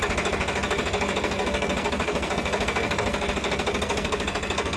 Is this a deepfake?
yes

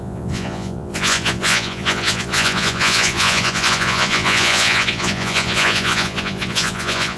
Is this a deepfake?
yes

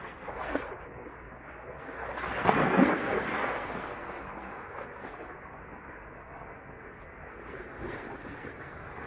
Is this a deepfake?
yes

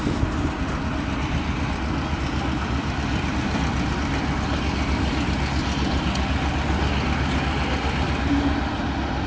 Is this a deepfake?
no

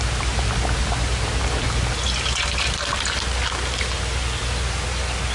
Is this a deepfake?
no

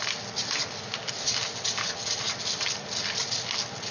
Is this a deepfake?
no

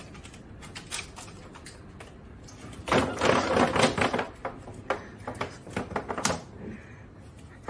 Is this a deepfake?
no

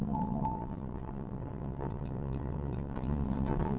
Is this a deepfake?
yes